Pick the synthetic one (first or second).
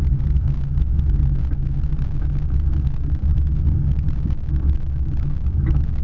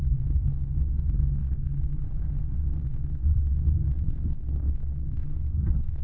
second